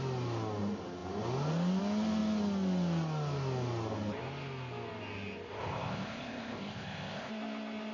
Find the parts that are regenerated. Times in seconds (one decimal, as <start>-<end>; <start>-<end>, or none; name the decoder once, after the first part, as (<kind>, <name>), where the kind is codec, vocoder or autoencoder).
5.6-7.3 (codec, ZipCodec)